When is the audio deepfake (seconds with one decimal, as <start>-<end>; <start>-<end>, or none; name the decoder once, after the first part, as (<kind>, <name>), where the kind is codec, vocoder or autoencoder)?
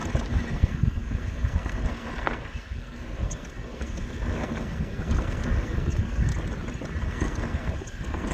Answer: 0.5-6.3 (codec, SNAC); 7.1-8.3